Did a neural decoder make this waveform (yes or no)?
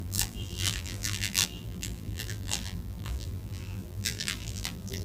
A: yes